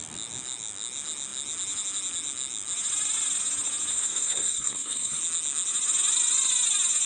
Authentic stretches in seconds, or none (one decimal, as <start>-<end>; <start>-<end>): 0.0-3.9; 5.2-7.1